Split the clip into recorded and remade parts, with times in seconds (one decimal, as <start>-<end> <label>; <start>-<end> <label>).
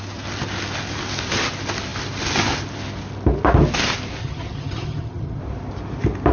0.0-4.2 recorded; 4.2-5.4 remade; 5.4-6.3 recorded